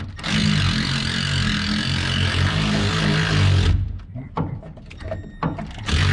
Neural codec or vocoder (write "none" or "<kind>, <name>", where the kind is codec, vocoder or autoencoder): none